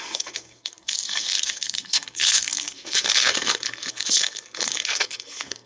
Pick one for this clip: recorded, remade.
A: remade